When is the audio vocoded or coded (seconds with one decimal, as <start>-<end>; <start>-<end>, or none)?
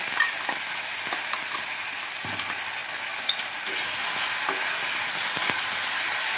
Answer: none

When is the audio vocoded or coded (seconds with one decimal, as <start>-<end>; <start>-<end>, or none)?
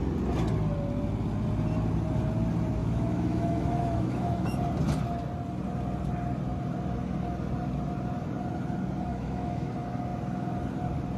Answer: 2.8-4.6; 9.1-9.7